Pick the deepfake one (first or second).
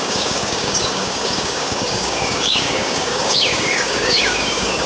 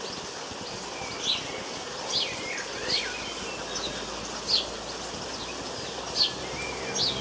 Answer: first